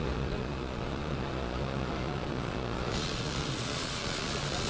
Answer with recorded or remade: remade